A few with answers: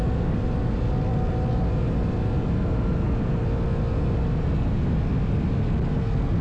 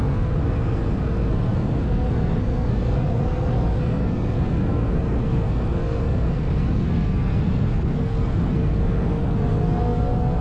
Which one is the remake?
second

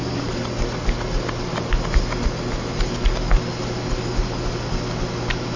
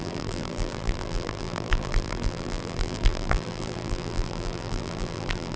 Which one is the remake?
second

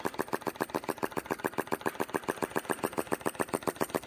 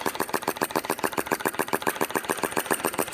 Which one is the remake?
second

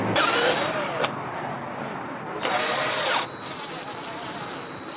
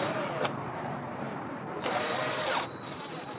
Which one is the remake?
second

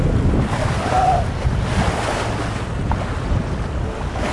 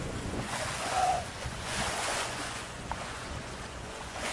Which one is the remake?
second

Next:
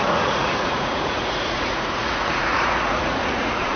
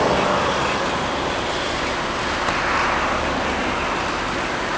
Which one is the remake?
first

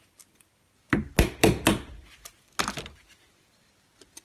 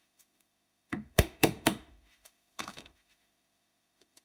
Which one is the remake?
second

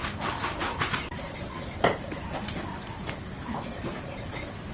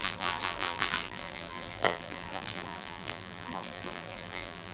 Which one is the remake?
second